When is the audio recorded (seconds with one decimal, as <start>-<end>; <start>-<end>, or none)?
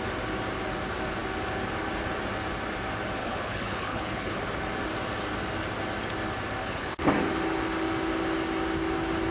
0.0-3.2; 4.4-6.6; 7.1-9.3